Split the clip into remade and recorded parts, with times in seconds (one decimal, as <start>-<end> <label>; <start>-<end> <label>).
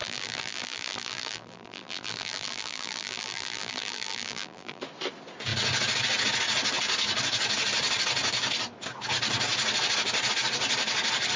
0.0-4.8 remade; 4.8-11.4 recorded